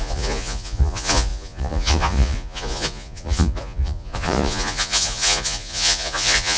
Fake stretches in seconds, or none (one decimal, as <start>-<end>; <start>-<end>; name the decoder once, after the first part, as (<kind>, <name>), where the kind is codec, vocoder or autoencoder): 0.0-6.6 (vocoder, Vocos)